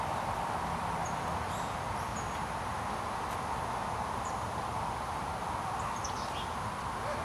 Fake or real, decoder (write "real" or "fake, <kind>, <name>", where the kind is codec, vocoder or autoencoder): real